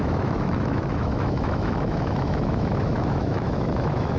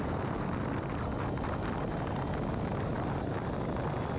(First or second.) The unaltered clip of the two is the second